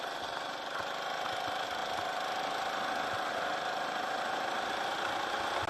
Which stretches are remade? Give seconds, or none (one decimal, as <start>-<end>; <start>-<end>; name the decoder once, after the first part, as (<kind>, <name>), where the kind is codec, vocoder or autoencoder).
none